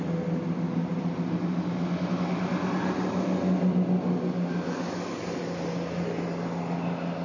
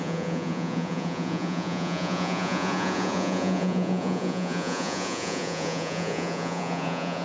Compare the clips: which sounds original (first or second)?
first